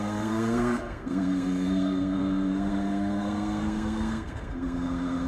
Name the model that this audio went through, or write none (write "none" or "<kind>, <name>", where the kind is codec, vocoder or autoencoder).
codec, SNAC